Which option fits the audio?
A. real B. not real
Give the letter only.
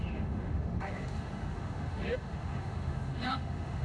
B